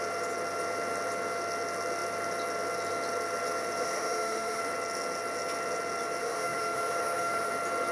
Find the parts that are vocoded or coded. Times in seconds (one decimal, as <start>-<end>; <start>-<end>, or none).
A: 3.8-4.6; 6.2-7.5